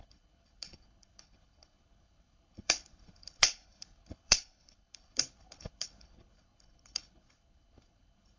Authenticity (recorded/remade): remade